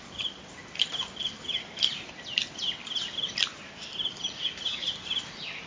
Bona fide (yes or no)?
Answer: no